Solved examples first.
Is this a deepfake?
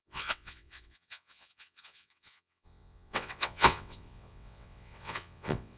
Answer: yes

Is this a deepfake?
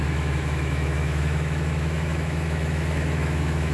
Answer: yes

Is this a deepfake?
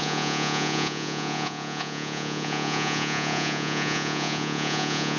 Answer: yes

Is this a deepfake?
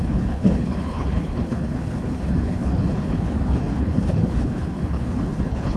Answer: yes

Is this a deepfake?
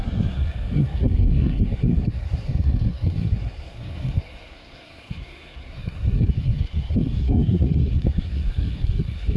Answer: yes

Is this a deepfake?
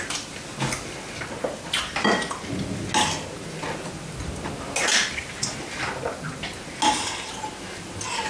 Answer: no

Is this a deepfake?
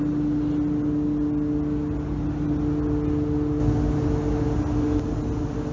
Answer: no